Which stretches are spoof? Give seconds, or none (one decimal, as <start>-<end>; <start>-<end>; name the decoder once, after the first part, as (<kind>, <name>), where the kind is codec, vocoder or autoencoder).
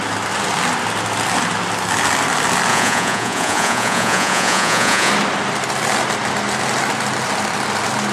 2.7-5.1 (vocoder, Vocos)